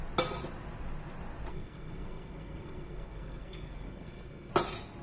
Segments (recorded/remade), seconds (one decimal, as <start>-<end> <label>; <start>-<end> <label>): 0.0-1.5 recorded; 1.5-4.5 remade; 4.5-5.0 recorded